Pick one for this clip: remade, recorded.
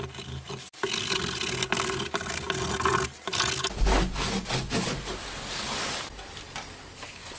recorded